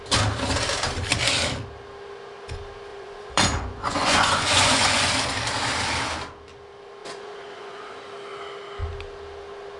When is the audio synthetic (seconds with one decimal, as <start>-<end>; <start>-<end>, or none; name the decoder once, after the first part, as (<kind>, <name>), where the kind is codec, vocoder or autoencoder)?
2.9-5.1 (vocoder, Vocos); 7.0-7.9